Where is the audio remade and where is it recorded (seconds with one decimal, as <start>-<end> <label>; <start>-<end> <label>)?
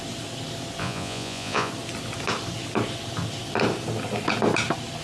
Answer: 0.0-0.8 recorded; 0.8-1.7 remade; 1.7-5.0 recorded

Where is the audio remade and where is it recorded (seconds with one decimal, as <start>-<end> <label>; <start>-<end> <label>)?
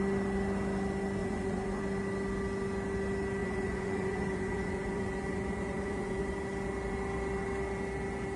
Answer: 0.0-1.2 recorded; 1.2-1.8 remade; 1.8-3.4 recorded; 3.4-6.2 remade; 6.2-8.4 recorded